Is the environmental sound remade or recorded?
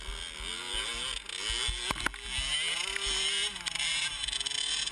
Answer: recorded